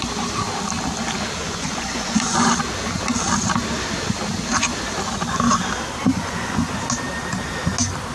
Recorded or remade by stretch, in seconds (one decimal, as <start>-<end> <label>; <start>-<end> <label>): 0.0-1.4 recorded; 1.4-2.5 remade; 2.5-6.0 recorded; 6.0-6.7 remade; 6.7-8.1 recorded